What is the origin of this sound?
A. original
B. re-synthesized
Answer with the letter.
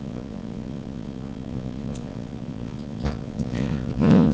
B